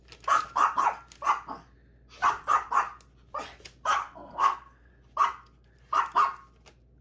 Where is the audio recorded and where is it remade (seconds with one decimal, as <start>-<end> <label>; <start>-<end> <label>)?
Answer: 0.0-4.0 recorded; 4.0-4.9 remade; 4.9-7.0 recorded